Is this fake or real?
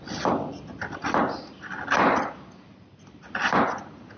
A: real